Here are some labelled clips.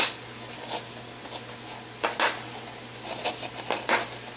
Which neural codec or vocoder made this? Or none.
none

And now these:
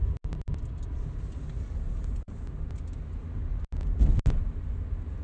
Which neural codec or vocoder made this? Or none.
none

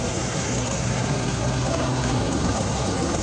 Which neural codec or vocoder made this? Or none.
codec, SNAC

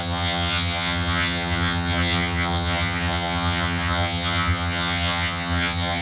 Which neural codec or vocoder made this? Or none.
vocoder, HiFi-GAN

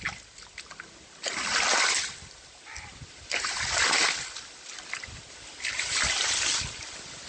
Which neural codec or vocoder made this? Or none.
none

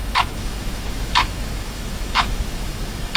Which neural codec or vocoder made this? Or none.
autoencoder, DAC-VAE